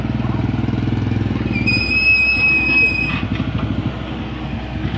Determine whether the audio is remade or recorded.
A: recorded